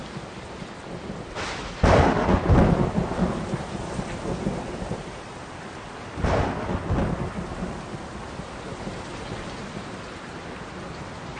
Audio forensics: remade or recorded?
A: recorded